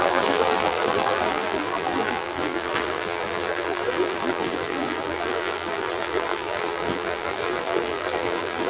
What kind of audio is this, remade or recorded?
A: remade